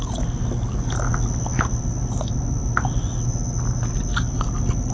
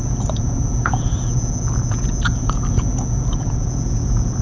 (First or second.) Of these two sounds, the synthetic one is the second